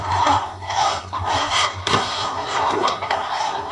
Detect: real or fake fake